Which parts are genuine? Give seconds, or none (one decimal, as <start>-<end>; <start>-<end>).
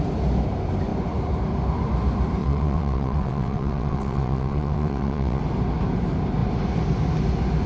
0.0-2.4; 5.4-7.7